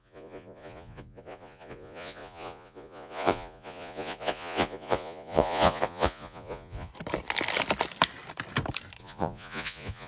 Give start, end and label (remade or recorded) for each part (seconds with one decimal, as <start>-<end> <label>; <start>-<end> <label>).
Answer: 0.0-6.9 remade; 6.9-9.0 recorded; 9.0-10.1 remade